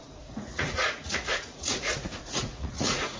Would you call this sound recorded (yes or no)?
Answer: no